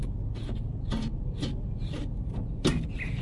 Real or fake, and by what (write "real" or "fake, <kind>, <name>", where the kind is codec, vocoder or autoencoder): real